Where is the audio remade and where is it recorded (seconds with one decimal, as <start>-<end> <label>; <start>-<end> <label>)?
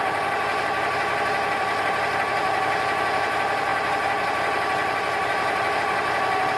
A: 0.0-6.6 recorded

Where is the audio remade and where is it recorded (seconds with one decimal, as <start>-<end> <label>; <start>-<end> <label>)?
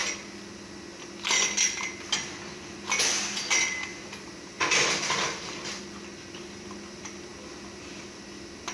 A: 0.0-3.9 recorded; 3.9-5.8 remade; 5.8-8.7 recorded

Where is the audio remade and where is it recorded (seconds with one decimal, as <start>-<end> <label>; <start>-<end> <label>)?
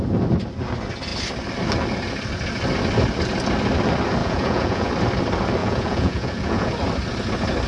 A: 0.0-4.2 recorded; 4.2-4.9 remade; 4.9-5.6 recorded; 5.6-6.7 remade; 6.7-7.7 recorded